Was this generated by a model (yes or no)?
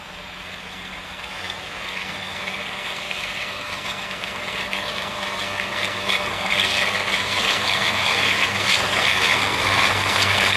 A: yes